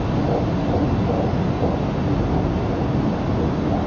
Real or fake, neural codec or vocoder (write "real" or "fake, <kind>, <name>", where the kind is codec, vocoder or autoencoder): real